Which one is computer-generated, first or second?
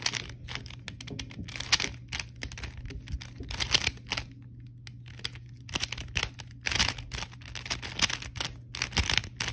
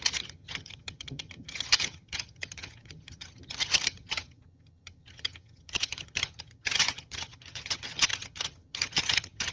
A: second